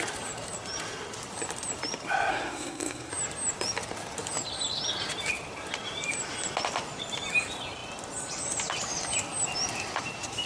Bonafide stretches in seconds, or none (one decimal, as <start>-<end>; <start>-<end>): 0.0-2.3; 3.1-10.5

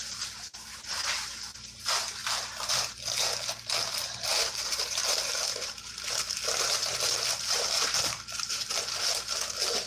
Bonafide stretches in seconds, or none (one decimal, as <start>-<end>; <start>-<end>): 0.0-4.3; 5.8-6.8; 8.7-9.9

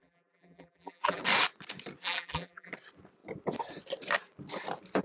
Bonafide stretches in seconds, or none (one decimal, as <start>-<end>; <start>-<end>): 1.2-2.0; 2.7-5.0

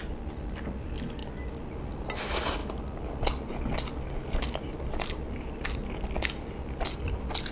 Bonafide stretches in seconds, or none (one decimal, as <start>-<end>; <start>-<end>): 0.0-7.5

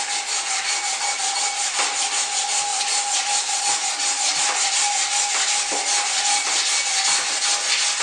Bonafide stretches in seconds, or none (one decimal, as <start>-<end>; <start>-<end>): 0.0-8.0

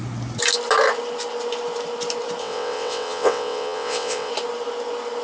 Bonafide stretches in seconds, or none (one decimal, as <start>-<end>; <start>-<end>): 0.0-2.4; 4.3-5.2

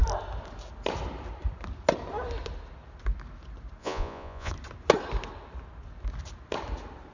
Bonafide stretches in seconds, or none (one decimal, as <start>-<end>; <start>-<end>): 0.0-3.8; 4.5-7.1